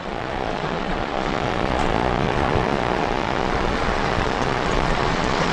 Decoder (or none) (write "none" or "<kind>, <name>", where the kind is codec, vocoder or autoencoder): vocoder, Vocos